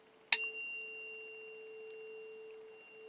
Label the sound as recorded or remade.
recorded